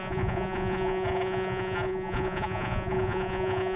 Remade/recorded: remade